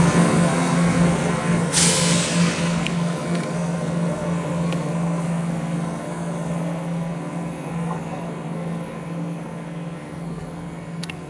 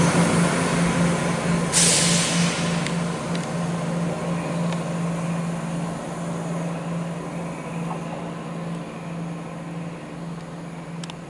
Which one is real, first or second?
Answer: second